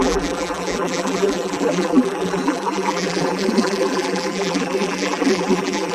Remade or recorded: remade